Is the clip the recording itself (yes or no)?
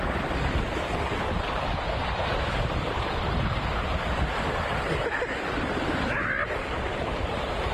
no